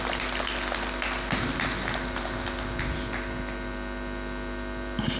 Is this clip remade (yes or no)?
no